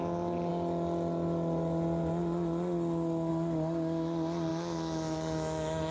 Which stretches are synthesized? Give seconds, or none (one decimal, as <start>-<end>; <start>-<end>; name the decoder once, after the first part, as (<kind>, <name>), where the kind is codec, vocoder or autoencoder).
4.5-5.9 (autoencoder, DAC-VAE)